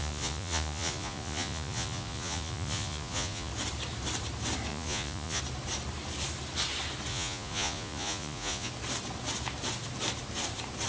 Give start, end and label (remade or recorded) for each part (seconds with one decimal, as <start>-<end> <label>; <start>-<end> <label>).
0.0-3.5 remade; 3.5-4.7 recorded; 4.7-5.4 remade; 5.4-7.1 recorded; 7.1-8.7 remade; 8.7-10.9 recorded